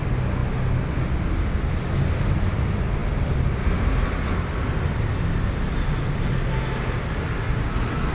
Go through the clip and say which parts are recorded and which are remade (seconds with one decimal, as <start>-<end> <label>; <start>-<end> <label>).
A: 0.0-8.1 recorded